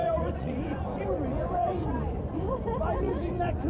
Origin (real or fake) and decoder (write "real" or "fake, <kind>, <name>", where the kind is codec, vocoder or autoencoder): fake, vocoder, Vocos